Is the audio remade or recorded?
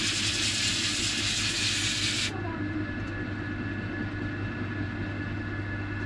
recorded